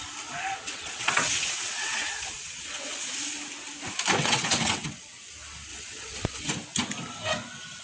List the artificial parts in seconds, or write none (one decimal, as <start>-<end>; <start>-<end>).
0.6-3.1; 4.2-5.3; 5.7-6.5